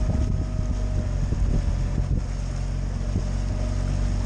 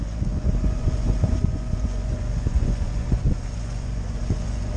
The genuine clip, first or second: first